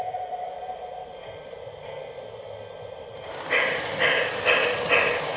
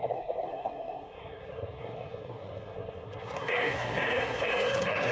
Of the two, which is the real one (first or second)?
first